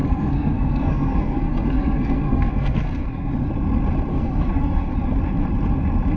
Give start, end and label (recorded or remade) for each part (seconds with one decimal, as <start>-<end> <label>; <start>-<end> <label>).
0.0-3.3 remade; 3.3-4.1 recorded; 4.1-4.9 remade; 4.9-6.2 recorded